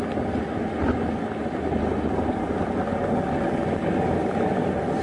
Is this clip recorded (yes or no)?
yes